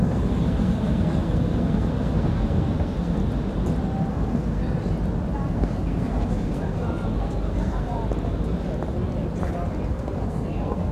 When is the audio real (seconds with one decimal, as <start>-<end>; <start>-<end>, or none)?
3.2-4.1; 4.6-5.5; 8.0-9.9

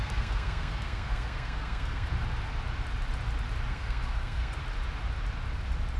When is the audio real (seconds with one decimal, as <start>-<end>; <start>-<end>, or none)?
2.1-3.7; 4.6-6.0

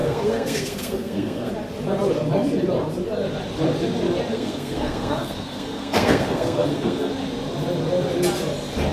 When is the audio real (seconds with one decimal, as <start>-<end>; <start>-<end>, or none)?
1.5-4.3; 7.1-8.9

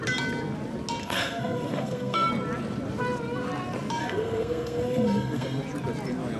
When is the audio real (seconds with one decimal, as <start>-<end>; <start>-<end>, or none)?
0.0-1.0; 2.3-4.0; 5.6-6.4

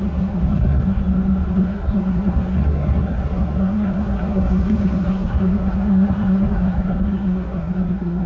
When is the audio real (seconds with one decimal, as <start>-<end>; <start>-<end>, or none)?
1.0-1.5

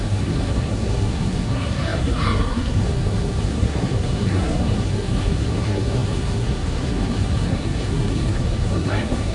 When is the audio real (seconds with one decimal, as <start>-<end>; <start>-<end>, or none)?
none

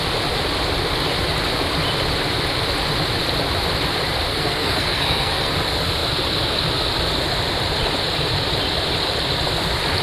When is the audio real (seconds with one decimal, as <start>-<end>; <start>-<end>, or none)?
0.0-4.3; 5.5-10.0